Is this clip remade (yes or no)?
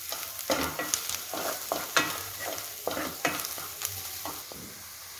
no